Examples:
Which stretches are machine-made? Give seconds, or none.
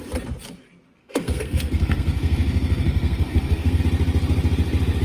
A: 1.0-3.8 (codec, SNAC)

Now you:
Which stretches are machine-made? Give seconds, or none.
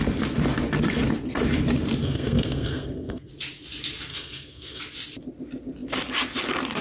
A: 2.0-3.3 (codec, SNAC); 4.1-4.8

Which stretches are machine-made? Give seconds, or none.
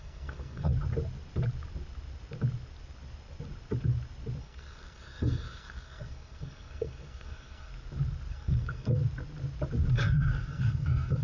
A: 0.0-0.7 (codec, SNAC); 4.4-7.7; 8.3-9.0; 9.9-11.2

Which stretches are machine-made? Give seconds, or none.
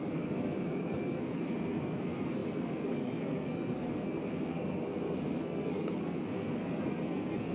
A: 0.0-7.5 (codec, SNAC)